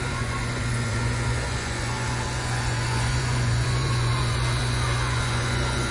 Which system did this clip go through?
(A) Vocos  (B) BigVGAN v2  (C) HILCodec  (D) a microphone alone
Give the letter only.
A